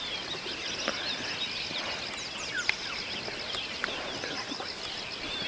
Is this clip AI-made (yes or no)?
no